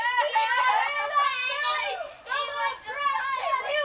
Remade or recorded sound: recorded